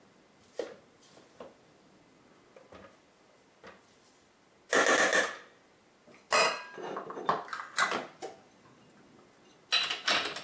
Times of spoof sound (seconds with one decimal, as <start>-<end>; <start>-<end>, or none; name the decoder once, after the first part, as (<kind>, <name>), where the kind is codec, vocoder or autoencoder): none